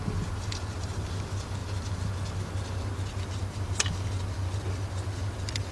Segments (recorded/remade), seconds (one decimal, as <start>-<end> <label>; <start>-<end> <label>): 0.0-5.7 recorded